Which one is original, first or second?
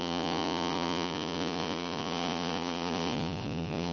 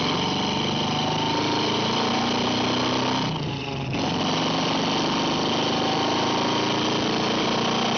second